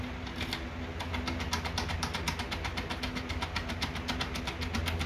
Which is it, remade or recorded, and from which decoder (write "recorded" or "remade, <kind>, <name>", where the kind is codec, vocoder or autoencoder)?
recorded